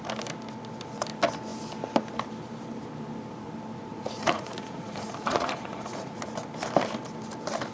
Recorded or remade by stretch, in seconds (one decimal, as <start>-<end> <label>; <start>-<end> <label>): 0.0-3.9 recorded; 3.9-6.2 remade; 6.2-7.7 recorded

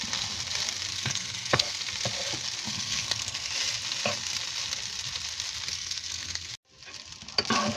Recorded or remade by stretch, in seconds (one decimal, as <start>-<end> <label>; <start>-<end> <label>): 0.0-0.9 recorded; 0.9-1.8 remade; 1.8-2.7 recorded; 2.7-3.5 remade; 3.5-5.7 recorded; 5.7-6.5 remade; 6.5-7.8 recorded

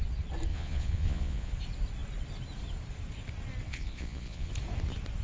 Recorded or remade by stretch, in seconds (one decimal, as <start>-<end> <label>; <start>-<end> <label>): 0.0-0.5 recorded; 0.5-1.5 remade; 1.5-3.7 recorded; 3.7-4.5 remade; 4.5-5.2 recorded